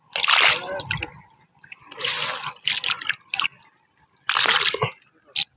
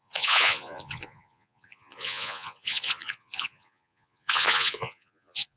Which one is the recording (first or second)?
first